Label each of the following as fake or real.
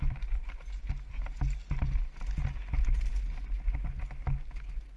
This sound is real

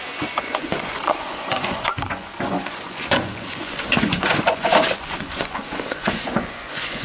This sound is fake